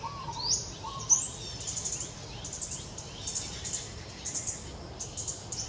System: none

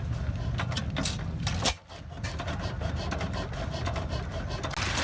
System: none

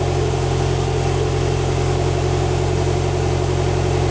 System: none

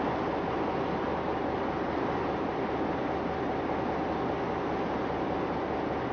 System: none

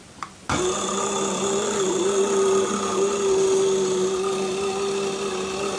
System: none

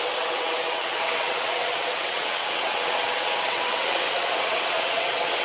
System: vocoder, WaveNeXt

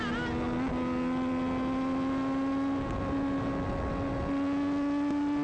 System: none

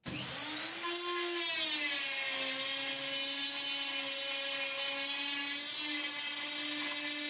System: none